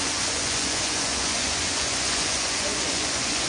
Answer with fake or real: fake